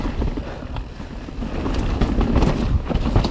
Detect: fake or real real